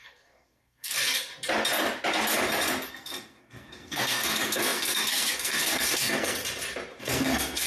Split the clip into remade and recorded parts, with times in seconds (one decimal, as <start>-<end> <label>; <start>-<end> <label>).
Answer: 0.0-1.3 remade; 1.3-2.9 recorded; 2.9-6.4 remade; 6.4-7.0 recorded; 7.0-7.7 remade